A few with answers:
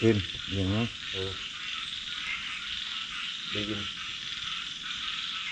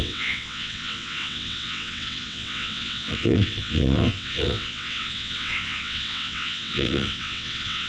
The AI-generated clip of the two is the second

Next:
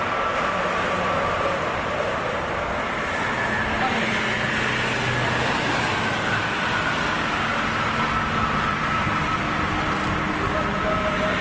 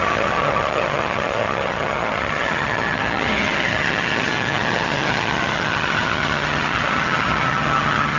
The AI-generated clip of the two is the second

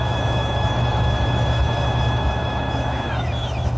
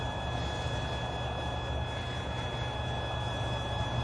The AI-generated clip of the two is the first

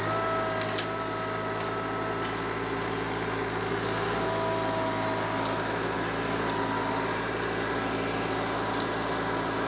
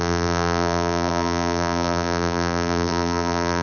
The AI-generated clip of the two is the second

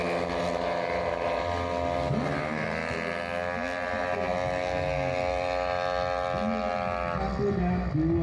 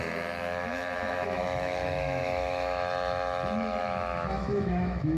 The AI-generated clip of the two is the second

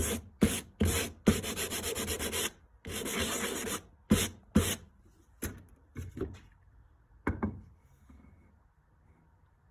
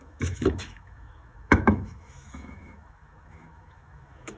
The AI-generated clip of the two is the second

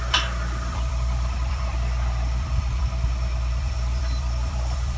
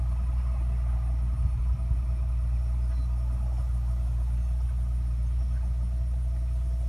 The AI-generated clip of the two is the first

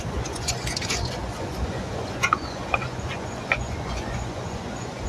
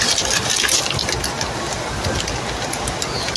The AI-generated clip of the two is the first